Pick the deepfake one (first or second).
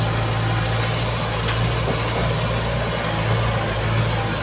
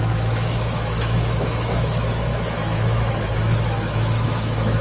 second